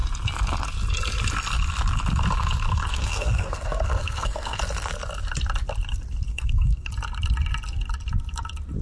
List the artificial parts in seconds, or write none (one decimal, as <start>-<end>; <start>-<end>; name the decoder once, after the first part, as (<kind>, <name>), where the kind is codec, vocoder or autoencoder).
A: 2.8-4.6 (codec, SNAC); 6.3-6.9